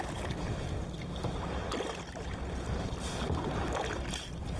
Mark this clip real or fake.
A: real